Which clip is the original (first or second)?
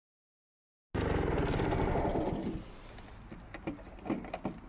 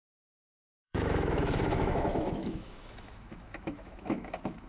first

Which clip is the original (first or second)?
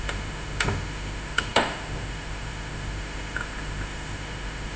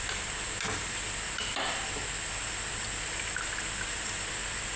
second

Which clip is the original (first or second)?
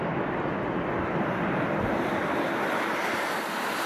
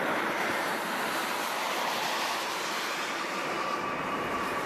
first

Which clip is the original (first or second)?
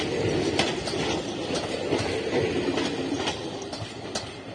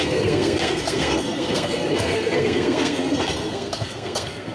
first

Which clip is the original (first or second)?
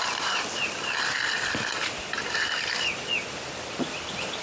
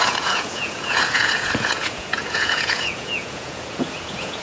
first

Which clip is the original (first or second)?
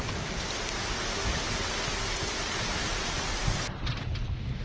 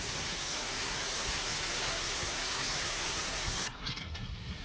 first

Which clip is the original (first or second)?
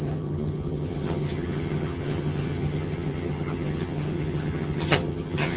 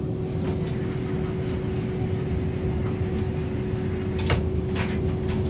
second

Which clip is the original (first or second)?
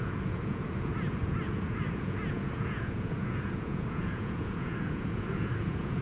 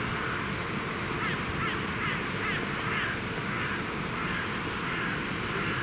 second